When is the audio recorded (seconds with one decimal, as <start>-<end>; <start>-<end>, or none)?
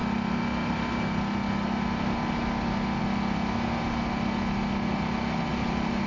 0.0-5.5